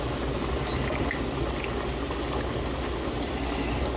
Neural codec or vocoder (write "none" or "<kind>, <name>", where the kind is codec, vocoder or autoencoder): none